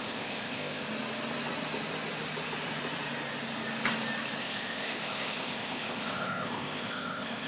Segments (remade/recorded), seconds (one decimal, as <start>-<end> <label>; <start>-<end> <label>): 0.0-0.8 remade; 0.8-4.4 recorded; 4.4-7.5 remade